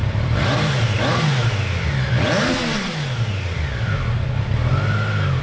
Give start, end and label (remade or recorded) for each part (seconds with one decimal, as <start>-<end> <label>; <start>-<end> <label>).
0.0-1.2 remade; 1.2-5.4 recorded

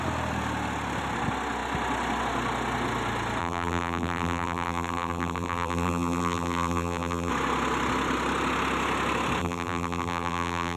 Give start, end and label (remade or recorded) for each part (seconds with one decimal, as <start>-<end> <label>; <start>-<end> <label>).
0.0-3.4 recorded; 3.4-7.3 remade; 7.3-9.4 recorded; 9.4-10.8 remade

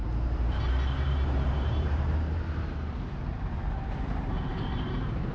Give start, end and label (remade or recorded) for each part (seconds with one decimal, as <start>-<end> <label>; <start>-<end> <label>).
0.0-3.2 remade; 3.2-4.5 recorded; 4.5-5.3 remade